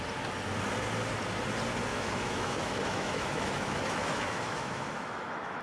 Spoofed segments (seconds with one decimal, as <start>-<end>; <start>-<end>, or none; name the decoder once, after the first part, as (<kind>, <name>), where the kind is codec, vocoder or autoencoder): 1.9-5.6 (autoencoder, DAC-VAE)